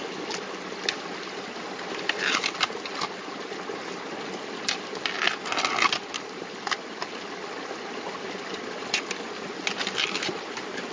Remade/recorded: recorded